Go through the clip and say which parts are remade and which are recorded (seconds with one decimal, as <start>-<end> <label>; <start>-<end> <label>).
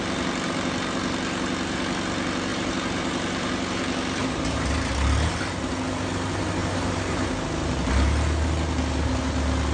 0.0-2.5 recorded; 2.5-3.8 remade; 3.8-4.2 recorded; 4.2-5.3 remade; 5.3-6.6 recorded; 6.6-7.3 remade; 7.3-9.7 recorded